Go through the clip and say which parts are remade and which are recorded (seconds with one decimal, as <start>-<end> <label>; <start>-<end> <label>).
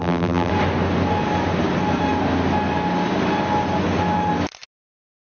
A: 0.0-0.5 remade; 0.5-5.3 recorded